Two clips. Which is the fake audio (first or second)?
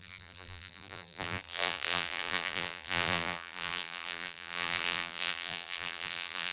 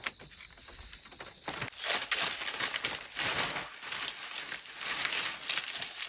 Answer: first